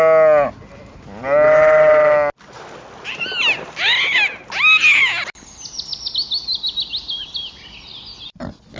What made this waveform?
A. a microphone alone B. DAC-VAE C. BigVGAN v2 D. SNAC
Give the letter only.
A